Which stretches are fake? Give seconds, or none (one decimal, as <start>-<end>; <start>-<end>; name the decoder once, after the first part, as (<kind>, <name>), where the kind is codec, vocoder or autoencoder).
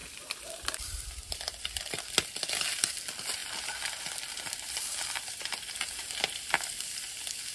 0.0-1.8 (vocoder, BigVGAN v2); 3.4-5.7